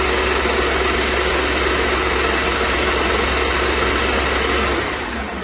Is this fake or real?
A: real